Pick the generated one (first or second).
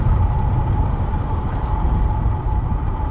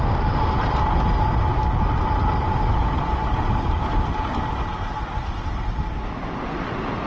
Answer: first